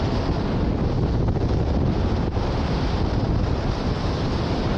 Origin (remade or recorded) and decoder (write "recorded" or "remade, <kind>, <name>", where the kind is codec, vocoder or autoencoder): remade, vocoder, BigVGAN v2